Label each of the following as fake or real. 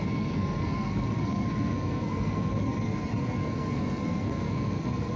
fake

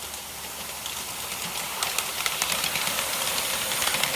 real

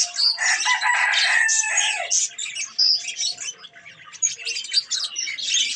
real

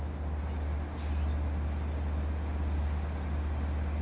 real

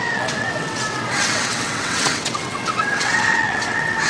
fake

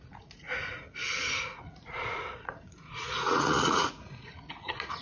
fake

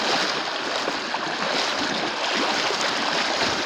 real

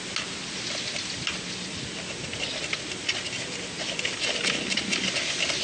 real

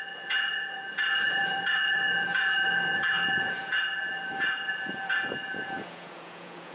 fake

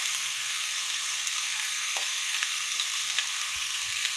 fake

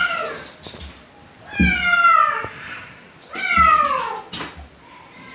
real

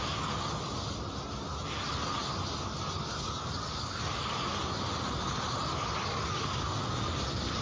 real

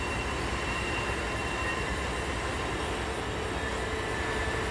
real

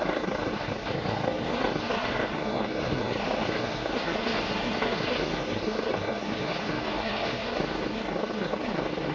fake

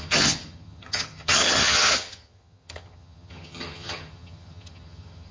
fake